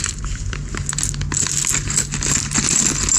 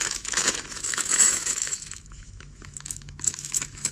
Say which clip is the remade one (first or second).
second